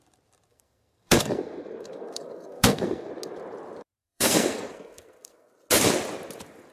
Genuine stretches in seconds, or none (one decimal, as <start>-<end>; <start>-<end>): 0.0-0.5; 3.1-4.0; 5.5-6.7